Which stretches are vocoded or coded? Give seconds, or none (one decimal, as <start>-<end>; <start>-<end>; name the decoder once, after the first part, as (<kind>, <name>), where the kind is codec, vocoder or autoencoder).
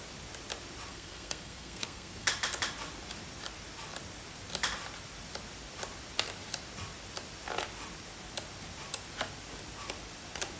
0.9-2.3 (codec, SNAC)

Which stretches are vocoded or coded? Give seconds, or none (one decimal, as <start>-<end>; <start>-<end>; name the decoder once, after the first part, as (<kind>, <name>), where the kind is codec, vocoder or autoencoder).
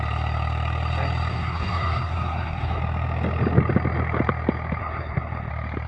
1.3-2.8 (codec, SNAC); 4.8-5.5